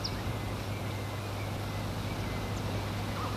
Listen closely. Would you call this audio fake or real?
real